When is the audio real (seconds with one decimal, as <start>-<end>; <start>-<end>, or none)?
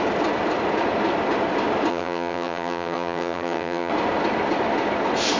0.0-1.9; 3.9-5.4